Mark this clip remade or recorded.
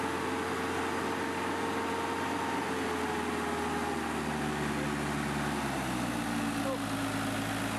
recorded